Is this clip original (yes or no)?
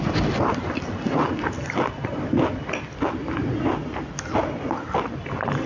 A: yes